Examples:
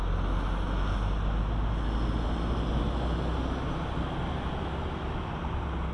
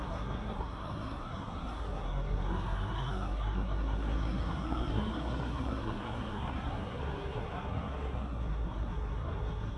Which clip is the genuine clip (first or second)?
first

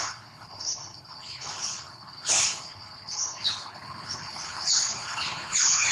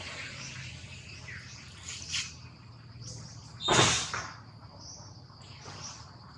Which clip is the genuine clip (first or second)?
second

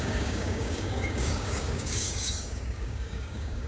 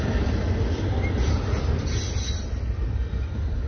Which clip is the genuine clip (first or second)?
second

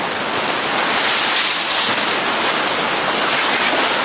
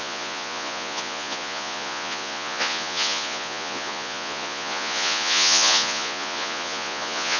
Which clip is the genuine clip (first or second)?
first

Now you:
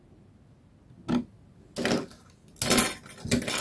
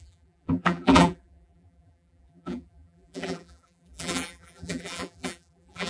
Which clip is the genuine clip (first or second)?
first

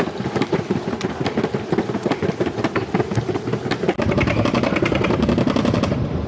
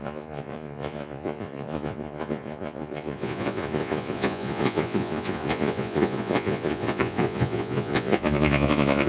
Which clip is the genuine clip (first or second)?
first